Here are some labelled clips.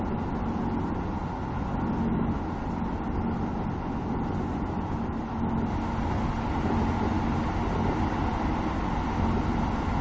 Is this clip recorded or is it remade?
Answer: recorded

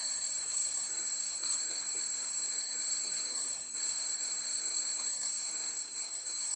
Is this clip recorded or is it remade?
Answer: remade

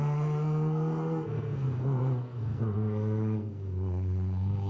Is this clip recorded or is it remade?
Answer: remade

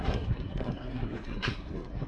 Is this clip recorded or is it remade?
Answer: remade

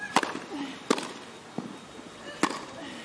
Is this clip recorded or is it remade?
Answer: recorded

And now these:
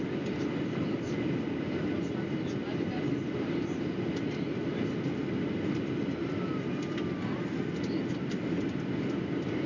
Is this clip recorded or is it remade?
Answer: recorded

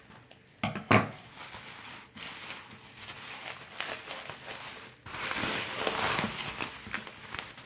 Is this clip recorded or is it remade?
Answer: recorded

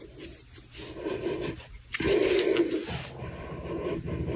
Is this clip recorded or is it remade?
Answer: recorded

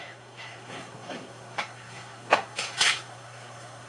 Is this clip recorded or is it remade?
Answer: remade